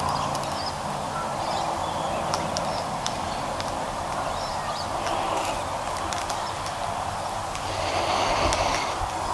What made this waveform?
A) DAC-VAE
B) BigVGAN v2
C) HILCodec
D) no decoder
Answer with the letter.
D